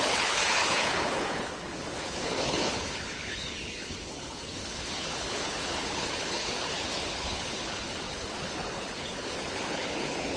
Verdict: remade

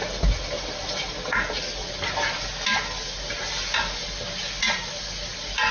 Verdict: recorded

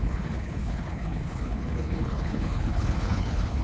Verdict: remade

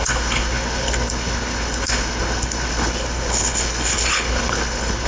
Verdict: remade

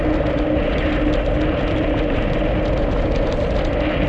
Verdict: recorded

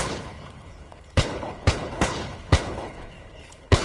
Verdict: remade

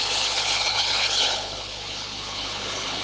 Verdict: remade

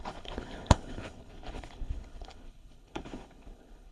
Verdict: remade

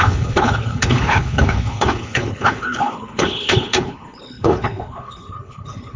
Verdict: remade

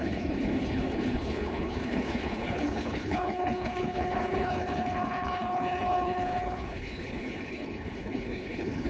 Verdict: remade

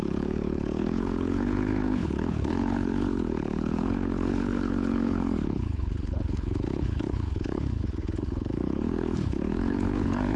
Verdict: remade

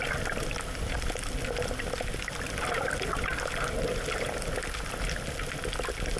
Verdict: recorded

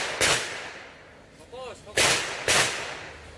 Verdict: recorded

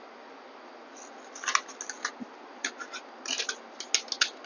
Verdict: recorded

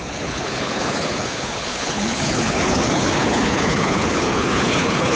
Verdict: remade